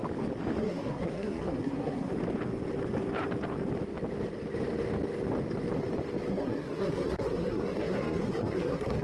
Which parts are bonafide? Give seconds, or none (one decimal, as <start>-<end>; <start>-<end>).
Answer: 0.0-0.6; 2.1-6.3